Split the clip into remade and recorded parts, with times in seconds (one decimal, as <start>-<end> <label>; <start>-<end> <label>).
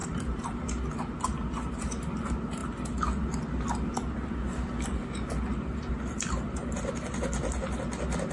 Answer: 0.0-0.8 remade; 0.8-8.3 recorded